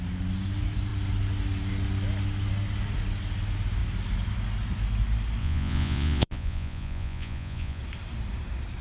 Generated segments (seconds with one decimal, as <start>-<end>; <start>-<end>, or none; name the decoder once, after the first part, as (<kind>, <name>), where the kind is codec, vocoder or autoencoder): 5.4-7.8 (vocoder, Vocos)